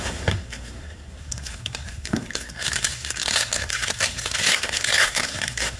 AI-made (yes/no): yes